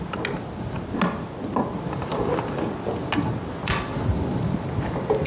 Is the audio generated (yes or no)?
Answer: no